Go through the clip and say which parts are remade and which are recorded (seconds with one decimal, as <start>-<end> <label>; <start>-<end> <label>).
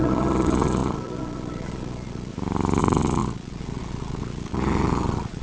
0.0-2.3 remade; 2.3-2.8 recorded; 2.8-5.4 remade